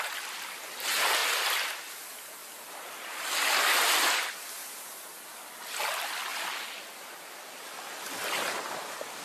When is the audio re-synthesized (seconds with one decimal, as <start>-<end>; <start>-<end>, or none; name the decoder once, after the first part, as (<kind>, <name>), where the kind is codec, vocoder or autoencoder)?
none